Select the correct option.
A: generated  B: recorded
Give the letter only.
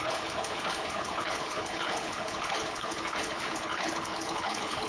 A